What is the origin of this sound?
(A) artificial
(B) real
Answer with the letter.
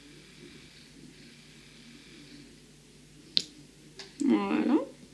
B